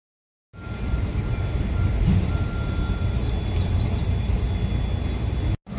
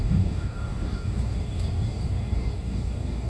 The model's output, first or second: second